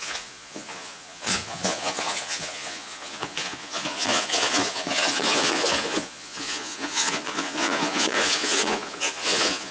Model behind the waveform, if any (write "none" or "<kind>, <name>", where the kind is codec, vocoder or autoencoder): vocoder, Vocos